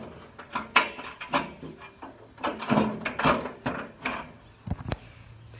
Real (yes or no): yes